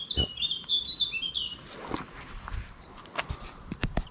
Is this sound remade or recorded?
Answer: recorded